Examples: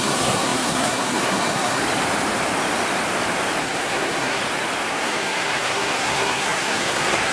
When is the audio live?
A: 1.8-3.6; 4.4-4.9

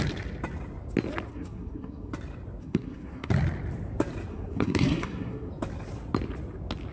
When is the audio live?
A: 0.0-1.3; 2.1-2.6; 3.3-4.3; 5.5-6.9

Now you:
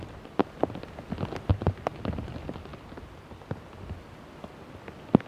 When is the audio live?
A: 0.0-5.3

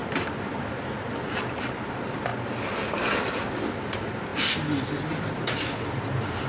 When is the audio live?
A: 0.0-6.5

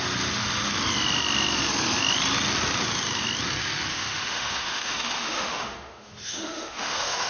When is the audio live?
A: 0.0-3.9